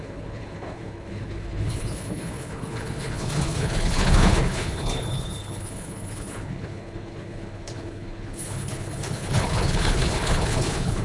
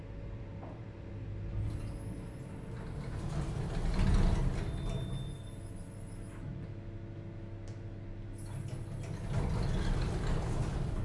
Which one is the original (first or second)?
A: second